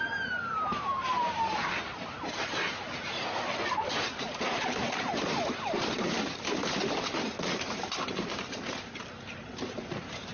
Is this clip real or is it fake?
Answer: fake